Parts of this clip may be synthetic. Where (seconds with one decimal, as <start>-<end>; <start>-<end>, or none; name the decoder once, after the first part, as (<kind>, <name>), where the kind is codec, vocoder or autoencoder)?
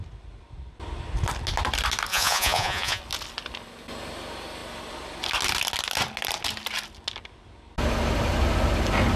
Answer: 2.1-3.0 (vocoder, Vocos)